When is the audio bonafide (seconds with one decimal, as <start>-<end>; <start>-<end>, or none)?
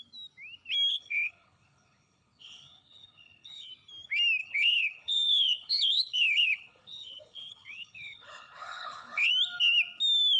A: 0.0-0.9; 3.7-4.4; 9.3-10.4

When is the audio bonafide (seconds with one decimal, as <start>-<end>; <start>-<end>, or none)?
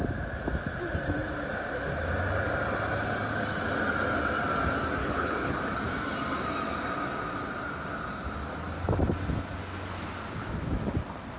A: 0.0-5.0; 5.6-11.4